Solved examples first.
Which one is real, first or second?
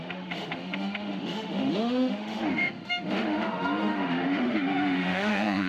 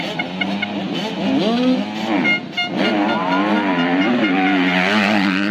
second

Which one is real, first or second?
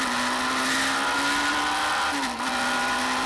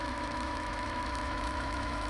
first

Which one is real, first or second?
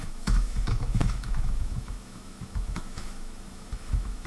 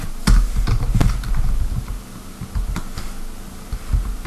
second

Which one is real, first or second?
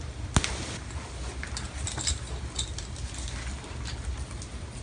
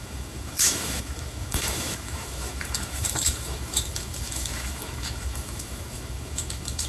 first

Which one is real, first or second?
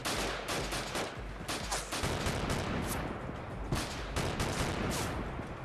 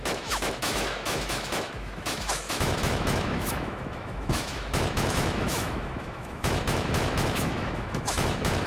first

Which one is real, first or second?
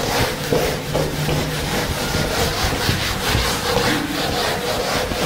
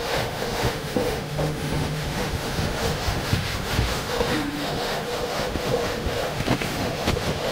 first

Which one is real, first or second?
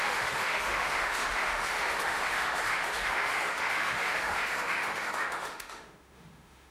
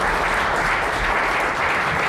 second